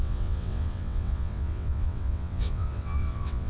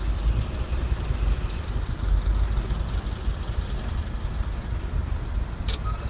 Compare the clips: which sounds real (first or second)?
second